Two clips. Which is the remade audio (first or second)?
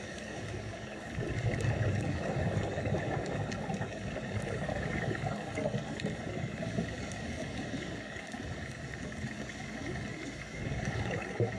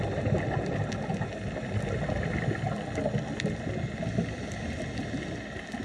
first